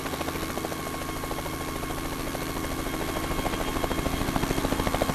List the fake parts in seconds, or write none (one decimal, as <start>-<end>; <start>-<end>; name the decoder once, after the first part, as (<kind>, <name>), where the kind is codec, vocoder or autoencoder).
none